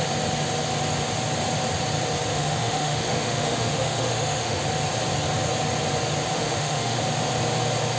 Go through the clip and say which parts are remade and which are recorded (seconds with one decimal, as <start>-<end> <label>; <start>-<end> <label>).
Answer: 0.0-2.3 recorded; 2.3-4.6 remade; 4.6-6.3 recorded; 6.3-7.0 remade; 7.0-8.0 recorded